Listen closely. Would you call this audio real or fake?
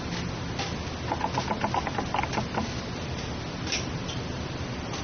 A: real